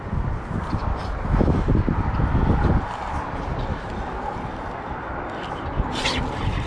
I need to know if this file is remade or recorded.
recorded